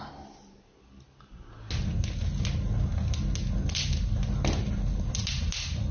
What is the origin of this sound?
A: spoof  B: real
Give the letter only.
B